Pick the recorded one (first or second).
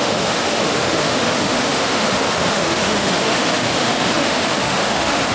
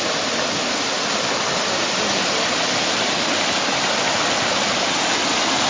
second